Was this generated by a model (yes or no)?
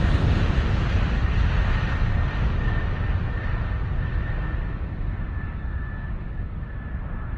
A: no